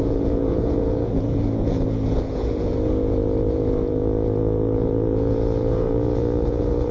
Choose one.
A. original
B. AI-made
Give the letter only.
B